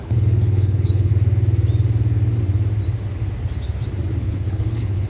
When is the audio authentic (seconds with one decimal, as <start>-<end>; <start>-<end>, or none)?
1.1-4.2